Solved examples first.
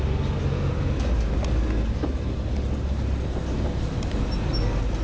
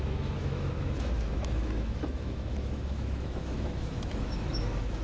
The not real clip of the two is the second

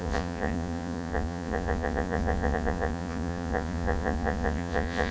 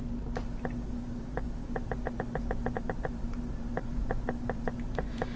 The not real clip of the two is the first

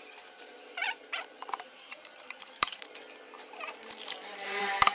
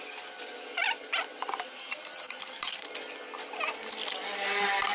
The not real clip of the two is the first